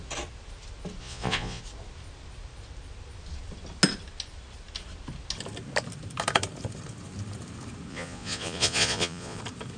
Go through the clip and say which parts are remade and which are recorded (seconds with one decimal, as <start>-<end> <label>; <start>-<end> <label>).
0.0-1.0 recorded; 1.0-1.6 remade; 1.6-7.9 recorded; 7.9-9.4 remade; 9.4-9.8 recorded

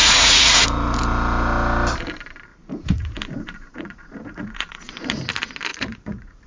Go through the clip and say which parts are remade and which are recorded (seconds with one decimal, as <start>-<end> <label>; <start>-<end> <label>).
0.0-0.6 remade; 0.6-2.5 recorded; 2.5-5.2 remade; 5.2-5.7 recorded; 5.7-6.5 remade

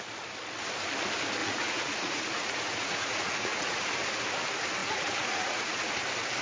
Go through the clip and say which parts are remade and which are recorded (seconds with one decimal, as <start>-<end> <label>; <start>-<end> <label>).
0.0-1.4 recorded; 1.4-3.8 remade; 3.8-4.8 recorded; 4.8-5.9 remade; 5.9-6.4 recorded

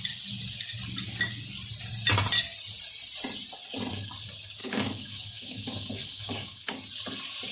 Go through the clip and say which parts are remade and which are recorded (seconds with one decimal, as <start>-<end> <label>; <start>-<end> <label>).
0.0-4.6 recorded; 4.6-6.7 remade; 6.7-7.5 recorded

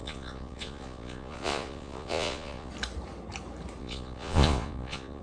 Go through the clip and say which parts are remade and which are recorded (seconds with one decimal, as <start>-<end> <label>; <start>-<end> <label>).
0.0-2.7 remade; 2.7-3.8 recorded; 3.8-5.2 remade

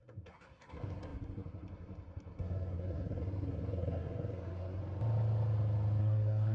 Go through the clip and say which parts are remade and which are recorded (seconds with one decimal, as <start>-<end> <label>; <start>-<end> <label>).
0.0-4.8 remade; 4.8-6.0 recorded; 6.0-6.5 remade